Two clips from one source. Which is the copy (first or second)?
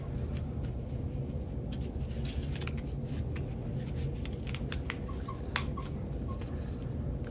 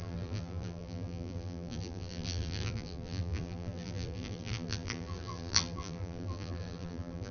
second